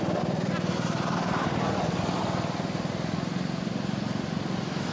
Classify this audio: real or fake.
real